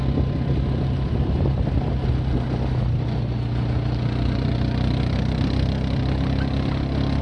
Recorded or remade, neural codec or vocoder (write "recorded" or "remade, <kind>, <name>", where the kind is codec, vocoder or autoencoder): recorded